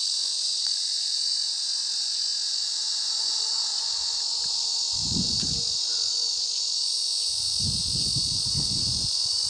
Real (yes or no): no